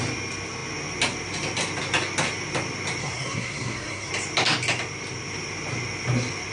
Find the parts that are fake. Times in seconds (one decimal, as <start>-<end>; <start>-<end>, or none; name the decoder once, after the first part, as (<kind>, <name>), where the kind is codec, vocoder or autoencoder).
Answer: 3.0-4.1 (codec, SNAC)

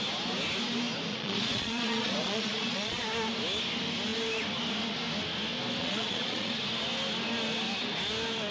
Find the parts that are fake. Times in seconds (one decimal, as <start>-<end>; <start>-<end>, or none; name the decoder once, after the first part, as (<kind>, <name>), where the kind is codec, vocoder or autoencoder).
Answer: 1.1-3.0 (vocoder, Vocos); 5.8-6.5

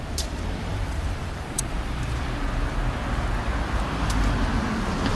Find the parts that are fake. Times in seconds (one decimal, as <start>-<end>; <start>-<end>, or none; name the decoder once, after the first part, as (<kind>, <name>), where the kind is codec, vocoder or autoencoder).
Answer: 0.7-2.2 (vocoder, BigVGAN v2)

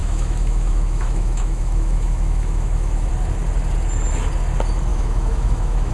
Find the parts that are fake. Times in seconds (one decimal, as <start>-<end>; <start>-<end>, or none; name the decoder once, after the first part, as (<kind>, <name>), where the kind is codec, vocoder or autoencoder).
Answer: 0.0-3.1 (autoencoder, DAC-VAE); 4.9-5.9